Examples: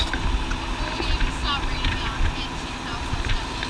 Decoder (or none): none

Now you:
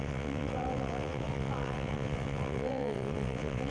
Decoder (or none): vocoder, WaveNeXt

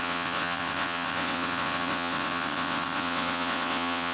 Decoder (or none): vocoder, WaveNeXt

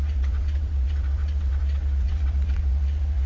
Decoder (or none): vocoder, WaveNeXt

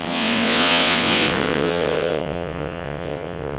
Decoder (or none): vocoder, WaveNeXt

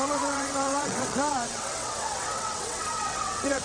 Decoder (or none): vocoder, WaveNeXt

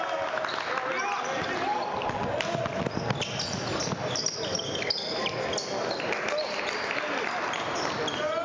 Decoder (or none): none